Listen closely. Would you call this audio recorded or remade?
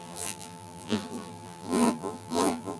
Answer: remade